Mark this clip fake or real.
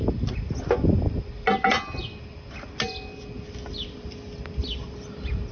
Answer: real